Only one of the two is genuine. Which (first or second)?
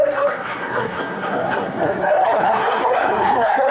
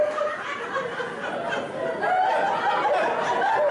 second